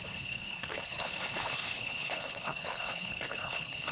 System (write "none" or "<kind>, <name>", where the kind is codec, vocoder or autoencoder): codec, HILCodec